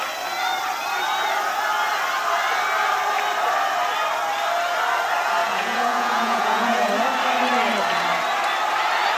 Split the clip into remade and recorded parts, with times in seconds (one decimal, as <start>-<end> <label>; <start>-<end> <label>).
0.0-5.4 recorded; 5.4-6.9 remade; 6.9-9.2 recorded